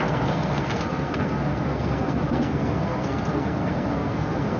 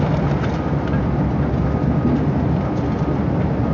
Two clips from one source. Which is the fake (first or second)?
first